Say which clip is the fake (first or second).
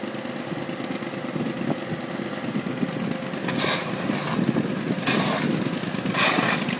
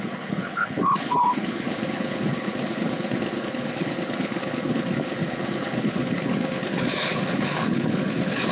second